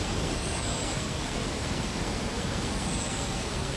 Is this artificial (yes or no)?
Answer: yes